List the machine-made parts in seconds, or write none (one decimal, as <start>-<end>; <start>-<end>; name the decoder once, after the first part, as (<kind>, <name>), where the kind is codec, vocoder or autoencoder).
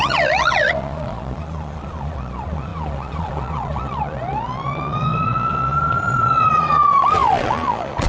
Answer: 0.0-8.1 (vocoder, Vocos)